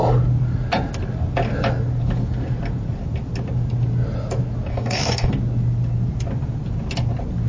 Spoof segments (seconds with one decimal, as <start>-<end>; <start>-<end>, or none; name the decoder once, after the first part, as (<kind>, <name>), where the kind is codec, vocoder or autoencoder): 4.7-5.3 (codec, DAC)